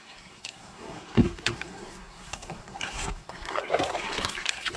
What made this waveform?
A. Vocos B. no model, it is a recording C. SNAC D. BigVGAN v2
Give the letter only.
C